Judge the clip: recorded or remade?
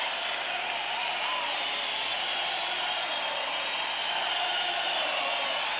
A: remade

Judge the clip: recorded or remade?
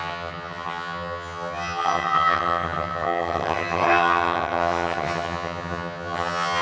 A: remade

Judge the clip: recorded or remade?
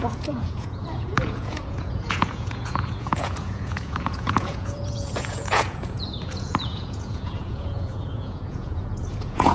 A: remade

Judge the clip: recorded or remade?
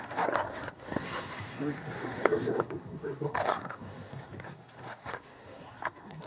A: remade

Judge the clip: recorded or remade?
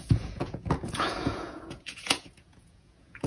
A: remade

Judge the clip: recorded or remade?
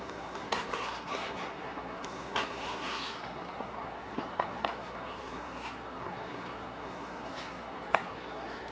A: remade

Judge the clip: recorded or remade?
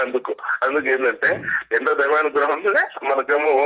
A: remade